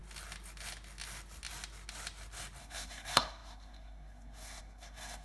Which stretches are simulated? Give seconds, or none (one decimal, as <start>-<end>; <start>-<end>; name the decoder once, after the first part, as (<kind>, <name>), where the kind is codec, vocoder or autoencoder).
2.6-5.2 (codec, SNAC)